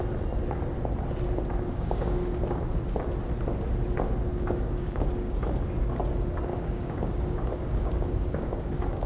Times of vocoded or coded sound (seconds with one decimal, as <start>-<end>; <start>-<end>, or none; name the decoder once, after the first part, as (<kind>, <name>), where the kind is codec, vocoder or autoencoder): 1.7-2.4 (codec, DAC); 4.3-5.4; 6.5-9.1